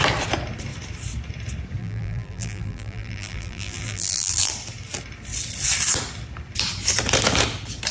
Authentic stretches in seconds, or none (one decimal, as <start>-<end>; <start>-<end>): 0.0-1.8; 4.5-7.9